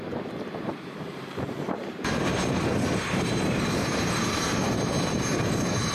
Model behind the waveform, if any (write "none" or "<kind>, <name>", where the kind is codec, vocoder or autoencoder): vocoder, BigVGAN v2